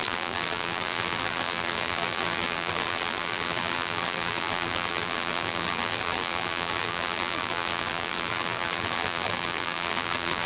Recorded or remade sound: remade